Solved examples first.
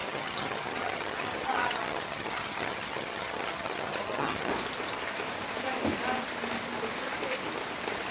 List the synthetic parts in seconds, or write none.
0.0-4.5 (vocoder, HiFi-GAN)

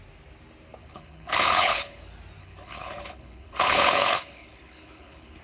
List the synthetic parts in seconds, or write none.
0.8-2.0 (codec, HILCodec); 2.4-5.4

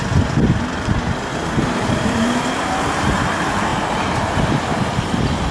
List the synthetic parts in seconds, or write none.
1.3-2.4 (vocoder, BigVGAN v2); 3.7-4.5

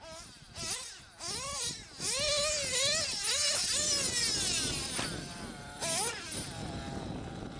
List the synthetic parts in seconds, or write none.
none

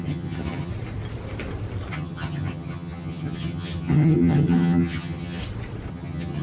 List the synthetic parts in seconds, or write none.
0.0-0.7 (vocoder, HiFi-GAN); 1.9-5.4; 5.9-6.4